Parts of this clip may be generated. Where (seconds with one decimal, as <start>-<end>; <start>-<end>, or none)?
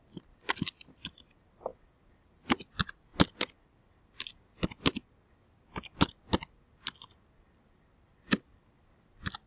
none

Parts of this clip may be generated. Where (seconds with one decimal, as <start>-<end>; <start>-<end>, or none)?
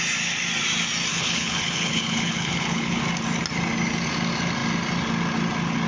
1.1-3.0